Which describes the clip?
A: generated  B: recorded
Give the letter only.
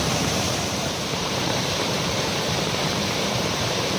A